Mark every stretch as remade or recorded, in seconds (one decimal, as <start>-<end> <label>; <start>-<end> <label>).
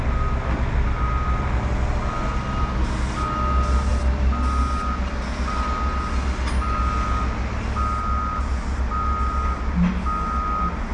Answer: 0.0-10.9 recorded